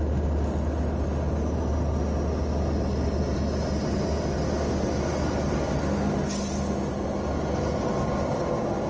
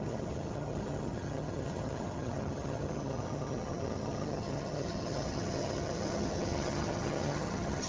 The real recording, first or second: first